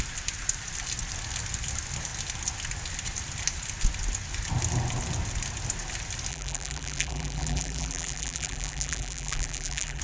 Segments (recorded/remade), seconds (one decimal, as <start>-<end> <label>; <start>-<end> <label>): 0.0-6.3 recorded; 6.3-10.0 remade